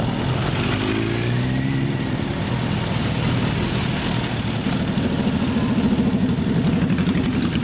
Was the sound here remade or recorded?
recorded